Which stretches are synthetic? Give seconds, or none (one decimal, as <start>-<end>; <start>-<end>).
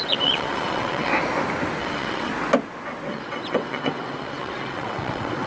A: 0.0-1.1; 1.8-2.3; 3.1-5.5